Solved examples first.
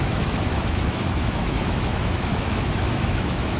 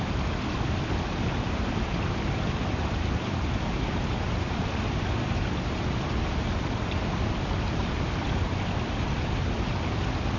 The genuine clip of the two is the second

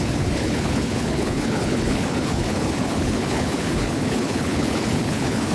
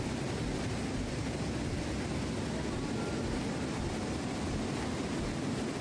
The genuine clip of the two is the second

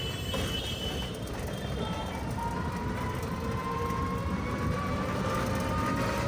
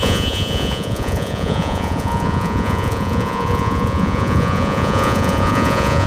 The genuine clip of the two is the first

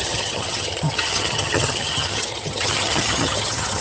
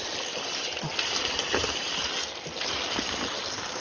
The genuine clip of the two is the second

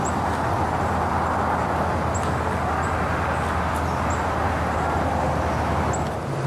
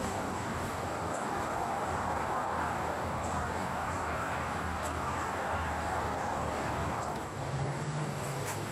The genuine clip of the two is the first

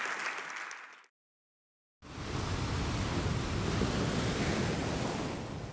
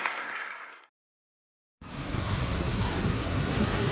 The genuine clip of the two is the first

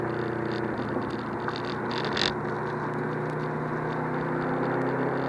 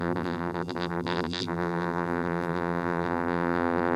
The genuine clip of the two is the first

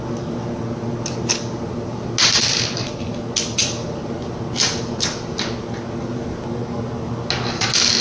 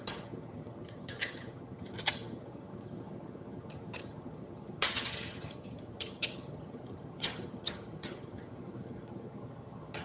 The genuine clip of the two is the first